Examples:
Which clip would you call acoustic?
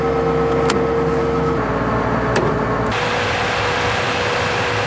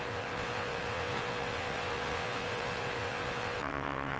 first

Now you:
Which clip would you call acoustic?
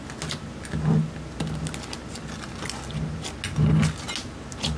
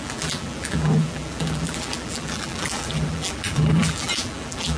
first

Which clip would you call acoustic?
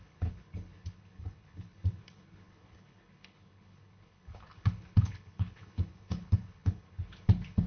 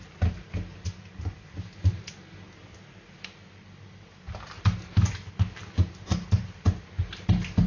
second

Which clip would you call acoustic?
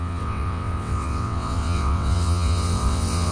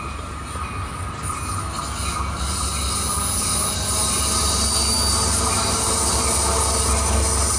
second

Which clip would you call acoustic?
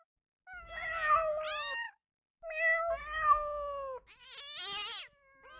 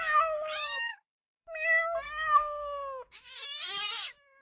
first